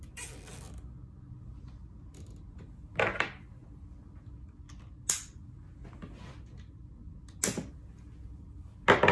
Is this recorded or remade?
recorded